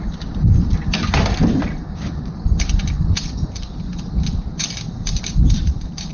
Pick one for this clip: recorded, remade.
remade